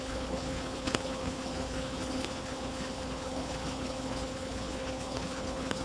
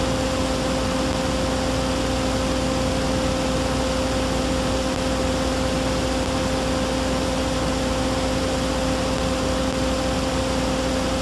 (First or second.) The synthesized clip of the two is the first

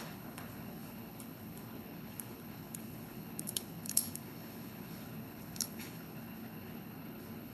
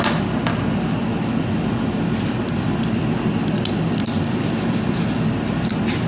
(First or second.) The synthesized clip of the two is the first